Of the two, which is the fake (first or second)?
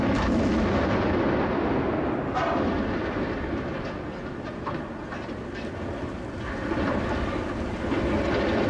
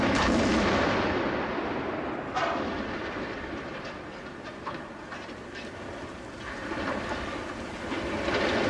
second